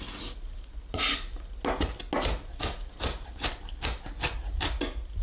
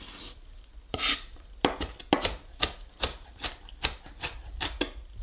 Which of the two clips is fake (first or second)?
second